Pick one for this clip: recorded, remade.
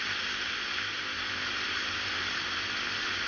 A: recorded